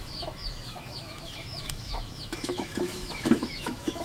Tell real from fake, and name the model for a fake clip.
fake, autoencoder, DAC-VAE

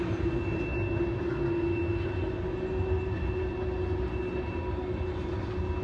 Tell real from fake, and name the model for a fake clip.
real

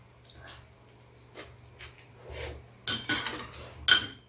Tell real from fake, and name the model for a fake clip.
real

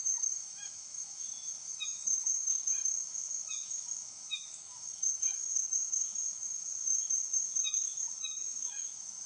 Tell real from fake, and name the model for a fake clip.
fake, autoencoder, DAC-VAE